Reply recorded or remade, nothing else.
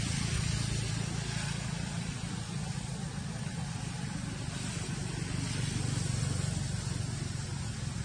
recorded